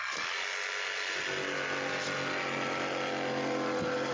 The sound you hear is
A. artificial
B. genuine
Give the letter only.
B